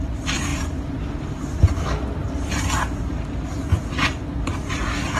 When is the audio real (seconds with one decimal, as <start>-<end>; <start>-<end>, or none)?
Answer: 0.0-0.5; 3.3-5.2